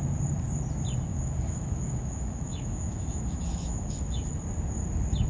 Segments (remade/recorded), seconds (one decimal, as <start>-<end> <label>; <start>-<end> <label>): 0.0-1.1 recorded; 1.1-4.3 remade; 4.3-5.3 recorded